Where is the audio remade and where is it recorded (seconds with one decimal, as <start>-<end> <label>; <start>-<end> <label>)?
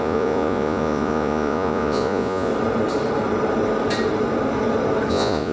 0.0-2.5 remade; 2.5-5.1 recorded; 5.1-5.5 remade